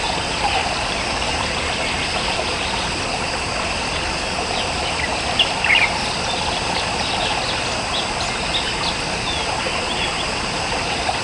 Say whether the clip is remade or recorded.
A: recorded